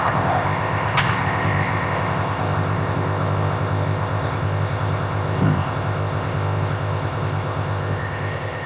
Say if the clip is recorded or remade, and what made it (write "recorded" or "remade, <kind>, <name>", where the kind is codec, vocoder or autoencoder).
remade, codec, ZipCodec